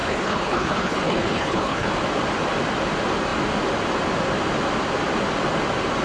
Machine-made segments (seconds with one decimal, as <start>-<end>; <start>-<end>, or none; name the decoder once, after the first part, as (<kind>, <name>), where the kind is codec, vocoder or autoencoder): 0.0-1.9 (codec, HILCodec)